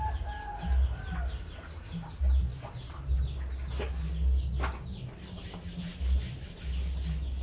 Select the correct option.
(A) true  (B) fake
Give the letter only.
A